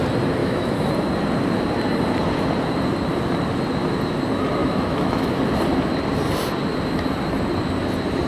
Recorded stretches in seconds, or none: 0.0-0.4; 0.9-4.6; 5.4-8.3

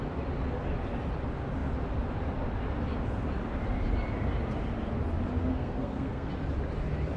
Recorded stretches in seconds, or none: 0.0-5.5; 6.3-7.2

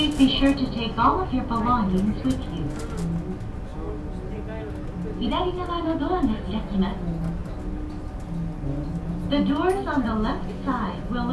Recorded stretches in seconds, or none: 0.0-11.3

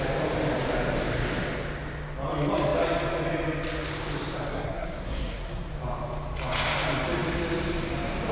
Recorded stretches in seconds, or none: 0.0-4.5; 5.7-8.3

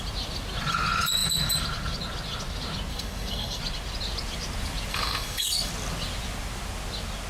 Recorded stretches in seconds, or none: 0.0-2.9; 3.6-4.9; 5.7-7.3

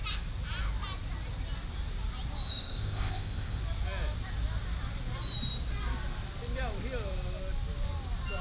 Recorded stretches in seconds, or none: 0.0-2.5; 3.6-8.4

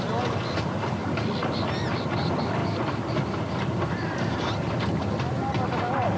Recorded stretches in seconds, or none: 0.0-2.6; 3.2-6.2

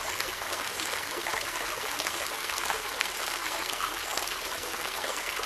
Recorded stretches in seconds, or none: none